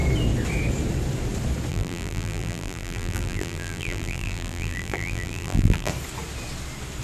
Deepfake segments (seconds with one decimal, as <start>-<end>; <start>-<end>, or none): 1.7-5.9